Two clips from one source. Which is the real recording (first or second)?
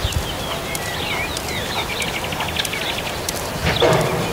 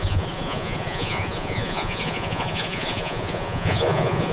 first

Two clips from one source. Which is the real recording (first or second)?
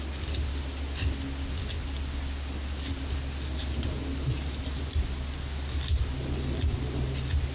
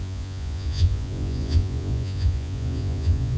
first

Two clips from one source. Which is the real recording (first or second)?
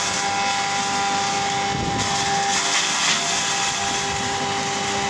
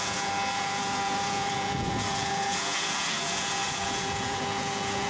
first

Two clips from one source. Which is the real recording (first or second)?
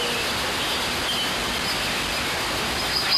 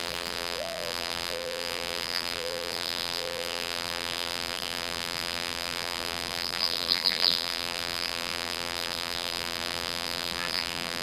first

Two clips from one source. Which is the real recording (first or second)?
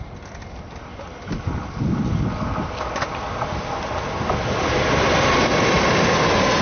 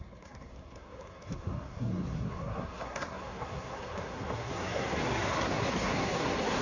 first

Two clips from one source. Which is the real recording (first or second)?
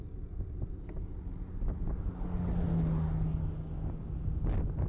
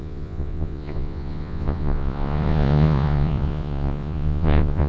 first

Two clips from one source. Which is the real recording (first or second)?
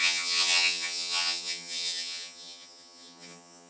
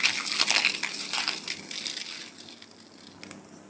second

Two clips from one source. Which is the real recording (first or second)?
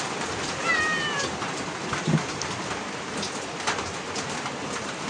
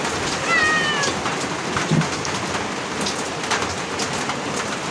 second